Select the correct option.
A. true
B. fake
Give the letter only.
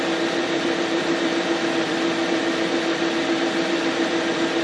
B